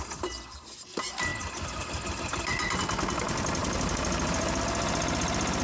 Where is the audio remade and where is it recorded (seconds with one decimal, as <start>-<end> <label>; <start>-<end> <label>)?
0.0-3.6 recorded; 3.6-4.6 remade; 4.6-5.6 recorded